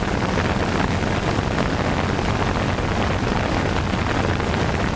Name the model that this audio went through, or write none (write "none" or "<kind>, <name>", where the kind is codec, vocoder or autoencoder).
none